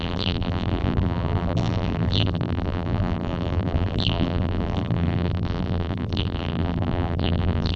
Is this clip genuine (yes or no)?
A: no